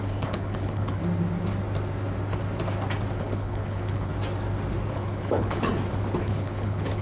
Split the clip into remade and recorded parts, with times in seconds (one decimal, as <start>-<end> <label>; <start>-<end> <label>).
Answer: 0.0-1.0 remade; 1.0-3.2 recorded; 3.2-4.1 remade; 4.1-4.9 recorded; 4.9-5.7 remade; 5.7-6.2 recorded; 6.2-7.0 remade

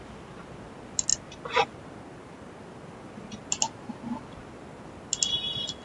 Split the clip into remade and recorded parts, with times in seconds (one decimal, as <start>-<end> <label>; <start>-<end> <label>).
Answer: 0.0-5.8 recorded

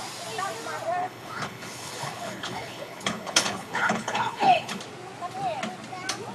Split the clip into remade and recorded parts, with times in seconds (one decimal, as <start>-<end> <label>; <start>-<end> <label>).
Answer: 0.0-1.0 recorded; 1.0-4.8 remade; 4.8-6.3 recorded

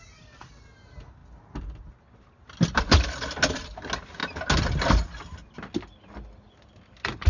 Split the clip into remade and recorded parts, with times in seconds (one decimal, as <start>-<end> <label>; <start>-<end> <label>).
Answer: 0.0-7.3 recorded

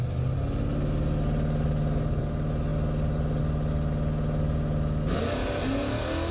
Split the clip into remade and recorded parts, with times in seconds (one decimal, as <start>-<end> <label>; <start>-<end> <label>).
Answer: 0.0-6.3 recorded

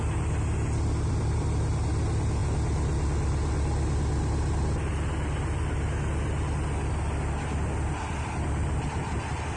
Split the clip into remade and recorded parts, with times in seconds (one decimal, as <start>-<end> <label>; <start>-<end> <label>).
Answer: 0.0-9.6 recorded

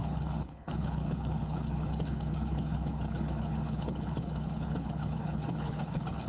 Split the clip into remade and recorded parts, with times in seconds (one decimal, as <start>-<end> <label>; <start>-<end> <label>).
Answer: 0.0-6.3 remade